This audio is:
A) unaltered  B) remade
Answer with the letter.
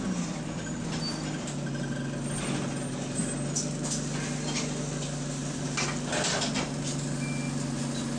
A